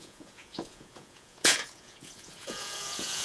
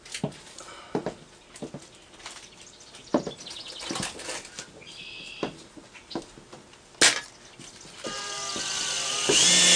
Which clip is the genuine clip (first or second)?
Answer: second